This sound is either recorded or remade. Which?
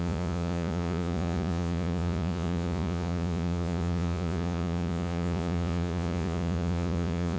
remade